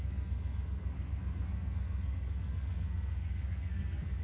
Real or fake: fake